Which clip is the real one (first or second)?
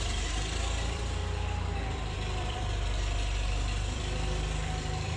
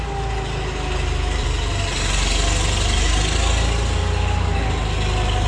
second